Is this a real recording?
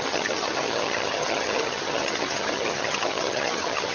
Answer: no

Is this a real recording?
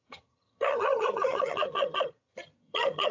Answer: no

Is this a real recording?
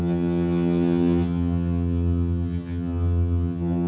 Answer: no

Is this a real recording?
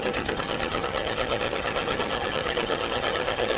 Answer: no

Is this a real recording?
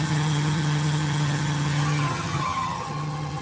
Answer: no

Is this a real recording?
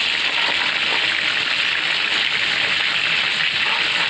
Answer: yes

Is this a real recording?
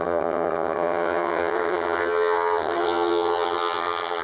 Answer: no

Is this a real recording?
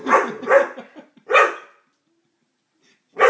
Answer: yes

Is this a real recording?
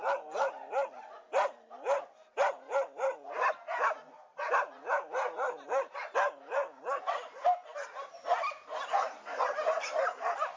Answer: yes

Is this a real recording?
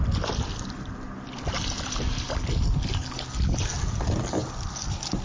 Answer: yes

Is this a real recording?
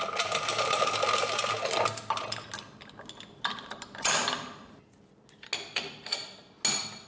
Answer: yes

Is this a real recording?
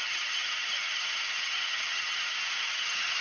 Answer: no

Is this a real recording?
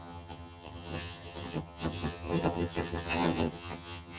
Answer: no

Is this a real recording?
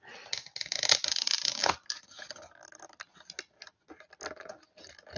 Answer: yes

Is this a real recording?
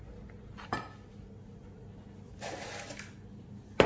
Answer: yes